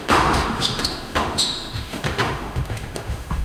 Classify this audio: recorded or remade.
remade